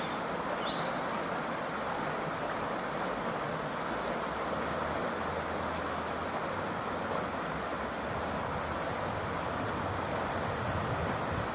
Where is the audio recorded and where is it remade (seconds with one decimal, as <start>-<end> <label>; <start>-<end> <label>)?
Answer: 0.0-11.5 recorded